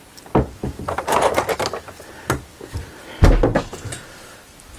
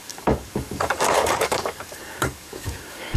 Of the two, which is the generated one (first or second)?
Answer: second